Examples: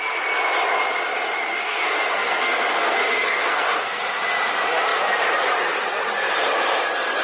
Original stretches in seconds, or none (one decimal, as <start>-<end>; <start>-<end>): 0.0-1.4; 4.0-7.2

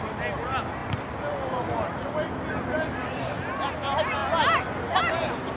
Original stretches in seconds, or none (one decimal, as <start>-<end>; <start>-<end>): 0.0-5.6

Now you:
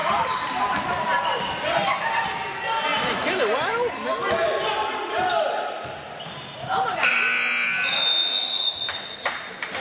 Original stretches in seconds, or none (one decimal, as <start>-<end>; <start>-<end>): 0.0-9.8

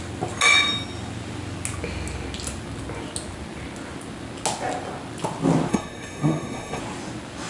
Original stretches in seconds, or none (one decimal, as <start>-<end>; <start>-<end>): 0.0-5.7; 6.8-7.5

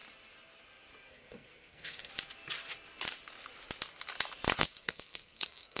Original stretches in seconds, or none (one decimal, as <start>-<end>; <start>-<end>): 0.0-1.1; 2.1-4.6

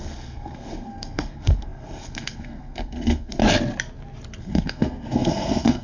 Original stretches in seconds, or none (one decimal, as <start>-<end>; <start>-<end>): 3.4-4.4